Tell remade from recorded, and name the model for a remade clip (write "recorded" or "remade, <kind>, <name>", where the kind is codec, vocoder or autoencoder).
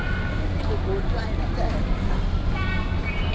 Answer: recorded